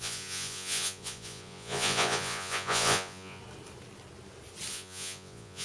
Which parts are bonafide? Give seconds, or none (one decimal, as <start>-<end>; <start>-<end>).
3.4-4.7